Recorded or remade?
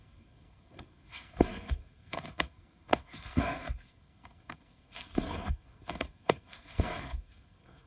remade